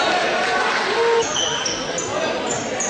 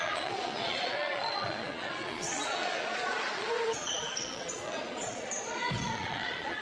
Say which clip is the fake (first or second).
second